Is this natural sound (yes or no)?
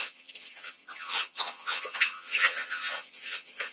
no